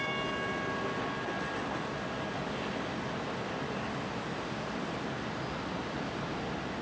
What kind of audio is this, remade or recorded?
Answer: recorded